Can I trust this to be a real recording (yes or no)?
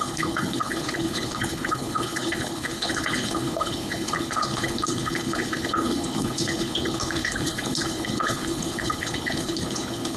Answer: no